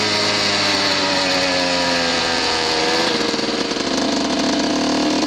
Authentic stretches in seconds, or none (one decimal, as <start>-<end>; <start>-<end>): 0.0-2.1; 2.8-5.3